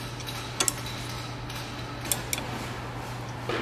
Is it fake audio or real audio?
real